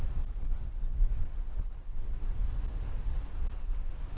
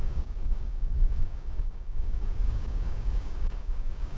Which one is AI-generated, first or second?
second